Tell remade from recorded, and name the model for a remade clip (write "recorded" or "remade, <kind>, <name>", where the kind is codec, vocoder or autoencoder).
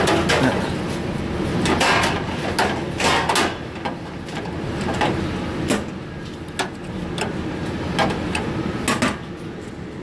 recorded